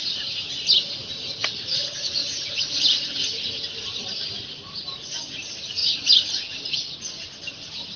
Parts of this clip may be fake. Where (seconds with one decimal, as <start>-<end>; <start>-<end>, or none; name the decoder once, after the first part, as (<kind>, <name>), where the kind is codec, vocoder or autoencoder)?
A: 0.0-1.2 (vocoder, BigVGAN v2); 2.2-4.0